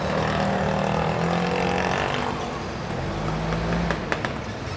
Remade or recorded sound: recorded